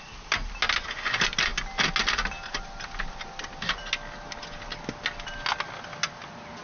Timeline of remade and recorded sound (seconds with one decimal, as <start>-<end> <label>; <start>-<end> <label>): 0.0-6.6 recorded